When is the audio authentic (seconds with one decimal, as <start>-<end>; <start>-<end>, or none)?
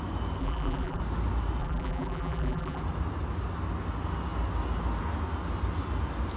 0.0-0.4; 1.0-1.6; 2.8-6.4